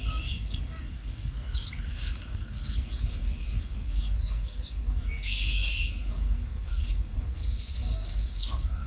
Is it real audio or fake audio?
fake